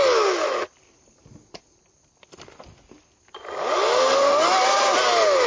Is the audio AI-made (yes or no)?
no